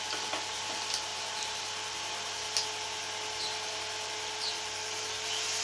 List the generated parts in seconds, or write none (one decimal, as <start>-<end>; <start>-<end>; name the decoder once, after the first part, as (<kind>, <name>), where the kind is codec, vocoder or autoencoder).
none

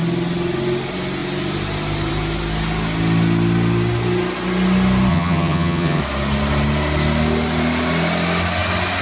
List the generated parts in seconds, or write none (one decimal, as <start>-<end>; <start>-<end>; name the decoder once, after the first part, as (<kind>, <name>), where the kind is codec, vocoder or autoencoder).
5.1-6.0 (vocoder, HiFi-GAN)

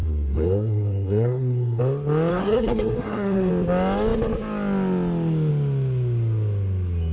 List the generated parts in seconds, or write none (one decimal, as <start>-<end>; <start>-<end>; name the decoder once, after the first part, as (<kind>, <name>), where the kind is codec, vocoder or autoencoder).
0.0-1.8 (codec, SNAC); 2.3-3.5